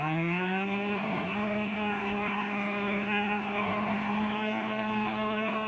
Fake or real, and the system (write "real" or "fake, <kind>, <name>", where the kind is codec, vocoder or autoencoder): fake, codec, SNAC